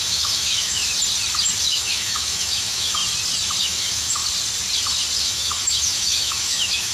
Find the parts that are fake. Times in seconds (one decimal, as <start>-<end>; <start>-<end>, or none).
0.0-0.8; 1.6-3.0; 3.6-4.2; 5.2-6.9